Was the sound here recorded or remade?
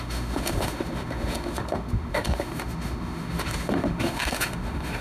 remade